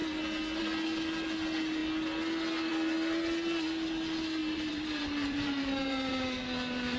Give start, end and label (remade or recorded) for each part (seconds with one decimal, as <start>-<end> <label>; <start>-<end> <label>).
0.0-4.4 recorded; 4.4-6.1 remade; 6.1-7.0 recorded